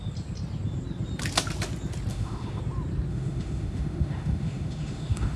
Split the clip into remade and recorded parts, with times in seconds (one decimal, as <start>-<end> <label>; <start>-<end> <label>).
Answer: 0.0-2.1 recorded; 2.1-2.6 remade; 2.6-3.1 recorded; 3.1-5.4 remade